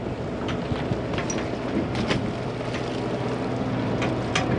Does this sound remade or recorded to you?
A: recorded